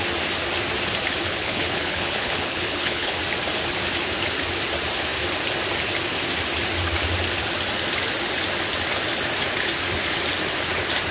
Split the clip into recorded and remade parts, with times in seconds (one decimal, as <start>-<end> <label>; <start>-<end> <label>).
0.0-1.3 recorded; 1.3-3.2 remade; 3.2-11.1 recorded